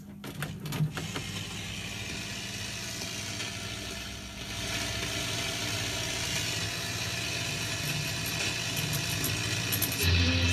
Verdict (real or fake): real